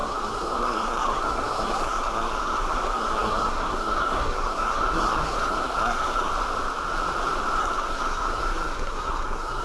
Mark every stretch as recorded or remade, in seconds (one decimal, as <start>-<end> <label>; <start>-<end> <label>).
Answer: 0.0-6.3 remade; 6.3-7.6 recorded; 7.6-9.6 remade